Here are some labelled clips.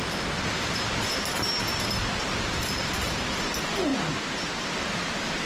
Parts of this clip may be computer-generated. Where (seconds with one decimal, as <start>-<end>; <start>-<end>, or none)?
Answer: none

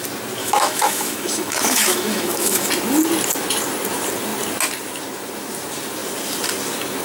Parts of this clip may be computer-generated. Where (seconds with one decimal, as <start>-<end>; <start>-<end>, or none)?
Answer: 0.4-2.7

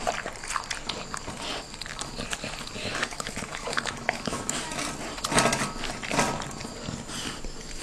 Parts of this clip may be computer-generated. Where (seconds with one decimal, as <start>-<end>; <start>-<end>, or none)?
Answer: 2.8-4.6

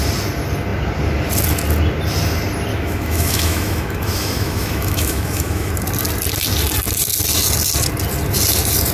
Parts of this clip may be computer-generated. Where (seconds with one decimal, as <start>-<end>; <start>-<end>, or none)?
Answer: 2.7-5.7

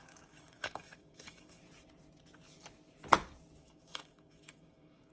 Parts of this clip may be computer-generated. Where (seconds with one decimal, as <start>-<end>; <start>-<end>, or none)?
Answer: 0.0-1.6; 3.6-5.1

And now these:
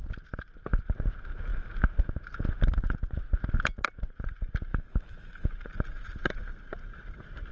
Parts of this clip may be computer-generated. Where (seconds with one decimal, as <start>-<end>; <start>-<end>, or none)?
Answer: 4.7-5.5

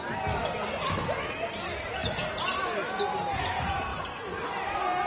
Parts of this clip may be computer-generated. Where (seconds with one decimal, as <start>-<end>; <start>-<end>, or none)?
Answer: none

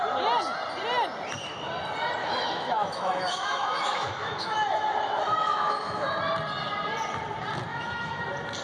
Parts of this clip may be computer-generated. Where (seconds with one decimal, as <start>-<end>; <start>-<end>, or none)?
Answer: 2.2-6.2; 7.7-8.2